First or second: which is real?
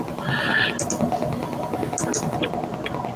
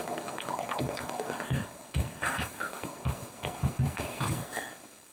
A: first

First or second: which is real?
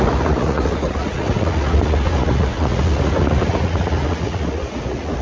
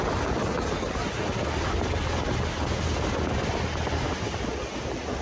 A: second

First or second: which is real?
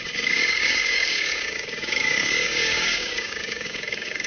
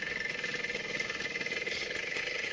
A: second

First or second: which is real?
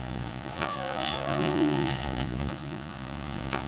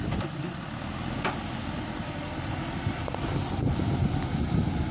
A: second